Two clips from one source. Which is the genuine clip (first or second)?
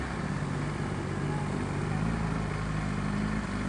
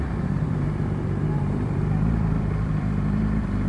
first